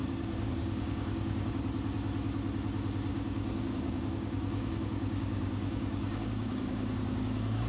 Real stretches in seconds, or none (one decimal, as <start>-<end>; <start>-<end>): 1.5-3.1